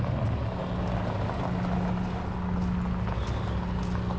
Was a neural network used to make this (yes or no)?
no